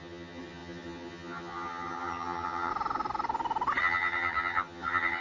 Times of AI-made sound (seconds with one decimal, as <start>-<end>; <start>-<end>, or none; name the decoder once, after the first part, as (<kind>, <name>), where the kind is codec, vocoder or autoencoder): 0.0-2.7 (vocoder, HiFi-GAN); 3.8-5.2